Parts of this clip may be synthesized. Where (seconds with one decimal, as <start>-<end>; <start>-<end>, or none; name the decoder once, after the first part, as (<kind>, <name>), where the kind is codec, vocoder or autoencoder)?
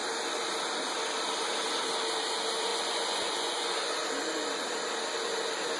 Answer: 2.7-3.9 (vocoder, Vocos)